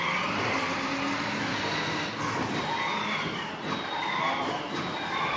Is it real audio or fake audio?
real